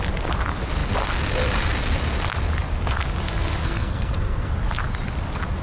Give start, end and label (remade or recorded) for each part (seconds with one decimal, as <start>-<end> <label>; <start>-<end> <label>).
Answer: 0.0-3.6 recorded; 3.6-4.5 remade; 4.5-5.6 recorded